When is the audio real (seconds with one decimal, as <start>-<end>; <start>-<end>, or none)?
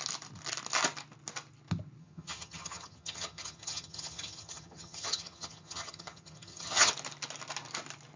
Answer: 0.0-2.0; 6.9-8.2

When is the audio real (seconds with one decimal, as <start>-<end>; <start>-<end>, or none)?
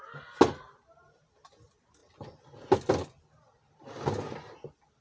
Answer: 0.0-5.0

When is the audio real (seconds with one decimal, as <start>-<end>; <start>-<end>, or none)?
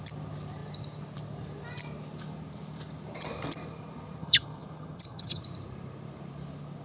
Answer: 0.0-4.2; 5.4-6.8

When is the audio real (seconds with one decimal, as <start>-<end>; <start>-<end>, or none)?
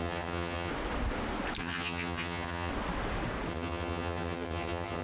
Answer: 0.7-1.6; 2.7-3.5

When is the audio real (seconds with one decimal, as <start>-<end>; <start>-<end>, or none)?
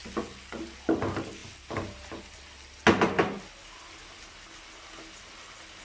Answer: 0.0-5.8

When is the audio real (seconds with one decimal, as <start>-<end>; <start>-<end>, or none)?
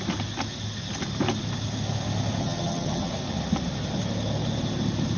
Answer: 0.0-2.4; 3.1-5.2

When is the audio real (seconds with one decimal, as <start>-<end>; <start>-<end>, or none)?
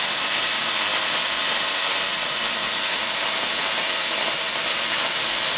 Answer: 0.0-5.6